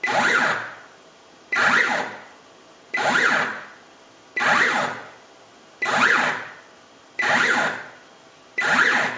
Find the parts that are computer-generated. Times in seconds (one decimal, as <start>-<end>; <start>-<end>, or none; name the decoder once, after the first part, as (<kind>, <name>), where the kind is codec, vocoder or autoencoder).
0.0-5.0 (vocoder, BigVGAN v2); 6.1-9.2